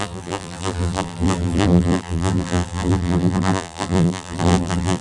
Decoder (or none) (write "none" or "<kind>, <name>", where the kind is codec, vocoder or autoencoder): vocoder, BigVGAN v2